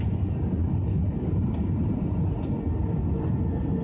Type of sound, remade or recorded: recorded